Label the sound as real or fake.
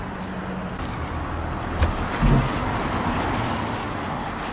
real